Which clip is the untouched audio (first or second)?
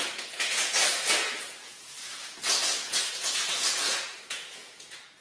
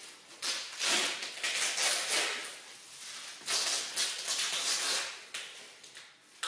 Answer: second